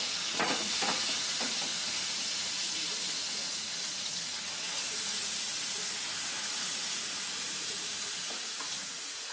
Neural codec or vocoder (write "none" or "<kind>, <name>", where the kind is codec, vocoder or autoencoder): vocoder, Vocos